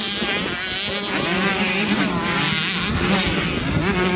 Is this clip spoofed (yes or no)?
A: no